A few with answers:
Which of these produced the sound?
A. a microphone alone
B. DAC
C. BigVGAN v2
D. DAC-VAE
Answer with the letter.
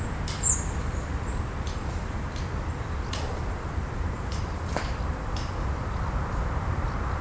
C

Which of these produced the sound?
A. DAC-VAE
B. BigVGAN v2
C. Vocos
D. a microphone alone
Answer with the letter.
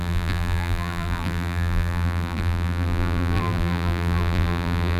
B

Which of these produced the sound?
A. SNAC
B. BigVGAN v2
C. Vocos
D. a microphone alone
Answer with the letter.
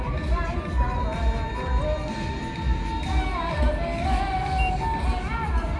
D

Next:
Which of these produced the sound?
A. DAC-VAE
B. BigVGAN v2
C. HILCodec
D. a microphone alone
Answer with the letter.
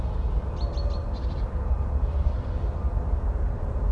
B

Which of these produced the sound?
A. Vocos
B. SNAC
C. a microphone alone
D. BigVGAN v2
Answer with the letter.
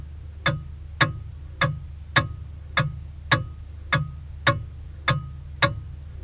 C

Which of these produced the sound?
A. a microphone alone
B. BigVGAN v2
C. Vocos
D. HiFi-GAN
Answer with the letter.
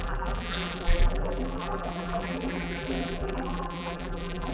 B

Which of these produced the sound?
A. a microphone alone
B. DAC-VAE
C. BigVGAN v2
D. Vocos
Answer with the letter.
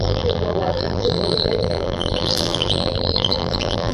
C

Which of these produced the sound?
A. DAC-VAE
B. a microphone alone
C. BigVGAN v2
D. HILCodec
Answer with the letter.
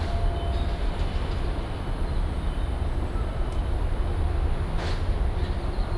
B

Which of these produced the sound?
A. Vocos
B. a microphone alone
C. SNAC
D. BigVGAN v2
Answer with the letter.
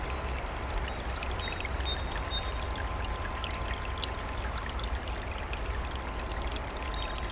B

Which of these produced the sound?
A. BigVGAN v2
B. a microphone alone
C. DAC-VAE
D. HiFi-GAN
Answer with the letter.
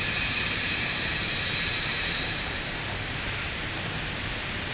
A